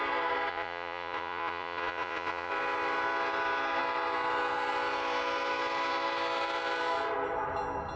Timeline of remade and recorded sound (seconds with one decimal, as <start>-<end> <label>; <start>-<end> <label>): 0.0-0.5 recorded; 0.5-2.5 remade; 2.5-8.0 recorded